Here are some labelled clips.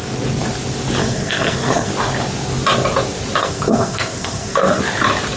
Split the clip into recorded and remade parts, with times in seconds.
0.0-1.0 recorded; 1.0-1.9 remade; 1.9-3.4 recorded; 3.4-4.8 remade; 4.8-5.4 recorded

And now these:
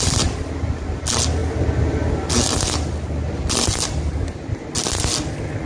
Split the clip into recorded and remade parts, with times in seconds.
0.0-5.7 recorded

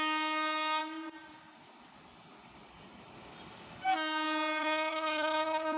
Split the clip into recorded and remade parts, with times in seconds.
0.0-4.6 recorded; 4.6-5.8 remade

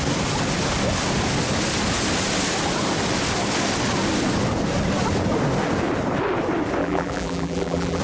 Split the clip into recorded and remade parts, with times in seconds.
0.0-6.8 recorded; 6.8-8.0 remade

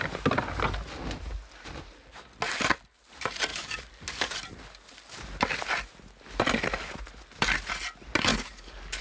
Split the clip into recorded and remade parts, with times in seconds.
0.0-3.5 recorded; 3.5-4.3 remade; 4.3-8.3 recorded; 8.3-9.0 remade

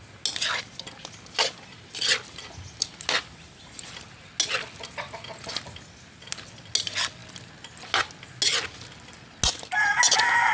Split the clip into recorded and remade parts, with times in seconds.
0.0-10.5 recorded

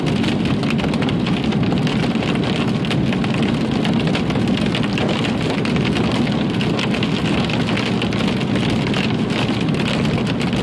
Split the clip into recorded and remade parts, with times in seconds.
0.0-10.6 recorded